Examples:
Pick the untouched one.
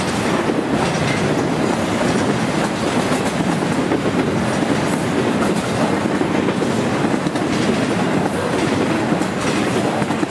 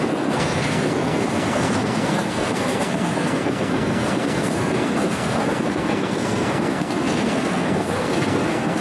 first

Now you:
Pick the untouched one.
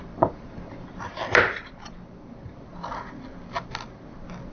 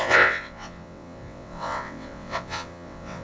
first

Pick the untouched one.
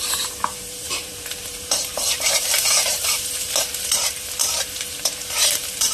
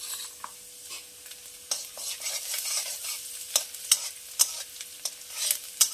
second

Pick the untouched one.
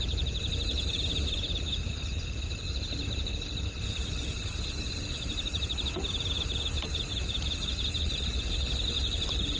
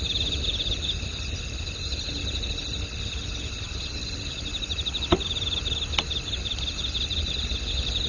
second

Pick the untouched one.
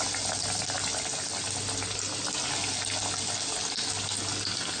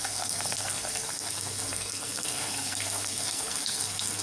first